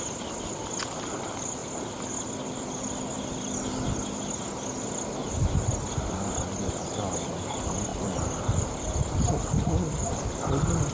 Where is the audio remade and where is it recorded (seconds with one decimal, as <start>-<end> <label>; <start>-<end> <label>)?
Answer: 0.0-1.6 recorded; 1.6-2.1 remade; 2.1-7.9 recorded; 7.9-10.2 remade; 10.2-10.9 recorded